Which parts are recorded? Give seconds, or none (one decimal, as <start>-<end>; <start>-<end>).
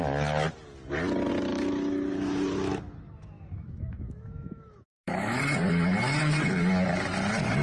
0.0-1.5; 5.4-7.6